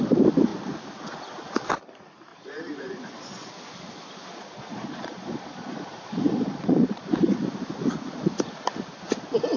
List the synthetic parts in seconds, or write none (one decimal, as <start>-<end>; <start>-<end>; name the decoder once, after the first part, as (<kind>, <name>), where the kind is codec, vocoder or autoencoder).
2.3-3.5 (vocoder, Vocos); 4.3-7.4

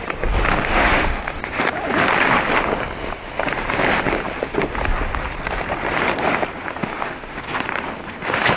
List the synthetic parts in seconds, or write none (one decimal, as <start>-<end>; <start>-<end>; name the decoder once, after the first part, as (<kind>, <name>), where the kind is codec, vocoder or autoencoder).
0.5-1.4 (autoencoder, DAC-VAE); 6.8-7.4